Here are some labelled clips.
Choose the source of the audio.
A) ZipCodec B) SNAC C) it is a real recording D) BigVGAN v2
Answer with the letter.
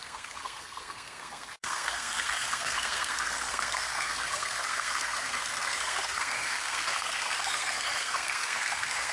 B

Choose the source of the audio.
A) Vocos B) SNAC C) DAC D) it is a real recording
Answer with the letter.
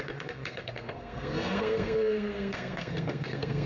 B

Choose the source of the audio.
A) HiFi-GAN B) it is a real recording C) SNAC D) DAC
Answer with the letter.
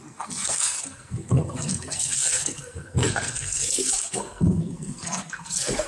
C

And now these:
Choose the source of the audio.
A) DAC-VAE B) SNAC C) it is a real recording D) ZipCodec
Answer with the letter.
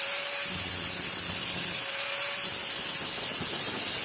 C